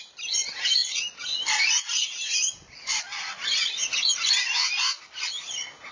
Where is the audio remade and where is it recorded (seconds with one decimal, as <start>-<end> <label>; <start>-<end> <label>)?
0.0-5.9 recorded